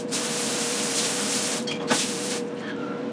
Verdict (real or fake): fake